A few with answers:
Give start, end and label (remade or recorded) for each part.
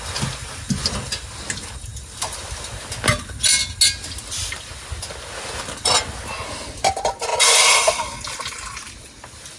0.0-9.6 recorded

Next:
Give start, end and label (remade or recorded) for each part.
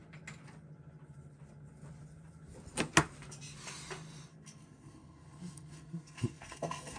0.0-4.3 recorded; 4.3-7.0 remade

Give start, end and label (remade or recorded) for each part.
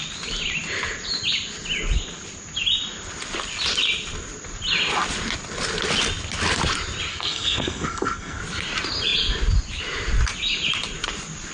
0.0-7.1 recorded; 7.1-8.4 remade; 8.4-11.5 recorded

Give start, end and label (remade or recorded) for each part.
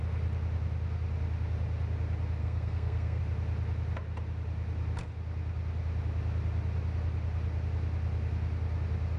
0.0-2.4 recorded; 2.4-3.2 remade; 3.2-9.2 recorded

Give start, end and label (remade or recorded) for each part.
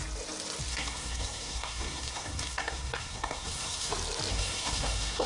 0.0-0.7 recorded; 0.7-3.9 remade; 3.9-4.3 recorded; 4.3-5.3 remade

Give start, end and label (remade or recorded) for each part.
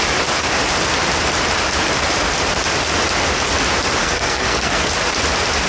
0.0-4.0 recorded; 4.0-4.9 remade; 4.9-5.7 recorded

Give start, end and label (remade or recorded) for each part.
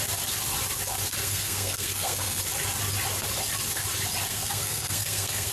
0.0-1.2 recorded; 1.2-2.4 remade; 2.4-4.3 recorded; 4.3-5.5 remade